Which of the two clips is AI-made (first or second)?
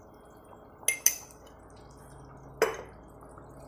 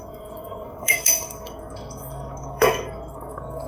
second